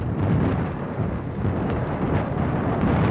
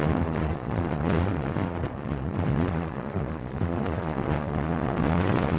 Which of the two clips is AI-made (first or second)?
second